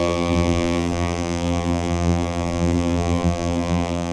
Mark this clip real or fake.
fake